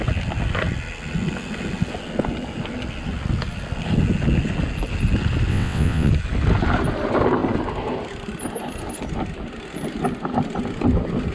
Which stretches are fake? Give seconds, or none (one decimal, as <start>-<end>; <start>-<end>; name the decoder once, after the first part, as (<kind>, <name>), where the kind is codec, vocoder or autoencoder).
5.5-6.1 (vocoder, WaveNeXt)